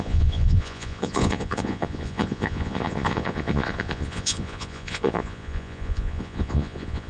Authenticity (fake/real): fake